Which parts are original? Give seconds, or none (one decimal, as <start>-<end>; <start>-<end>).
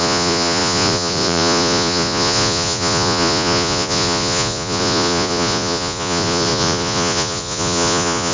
none